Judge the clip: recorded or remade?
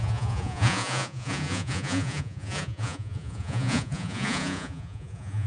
remade